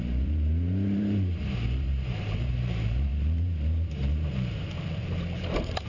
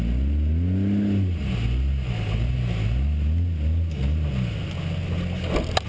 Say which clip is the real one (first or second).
second